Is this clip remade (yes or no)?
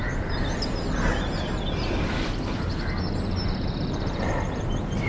no